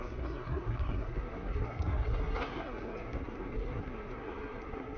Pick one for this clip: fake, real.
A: fake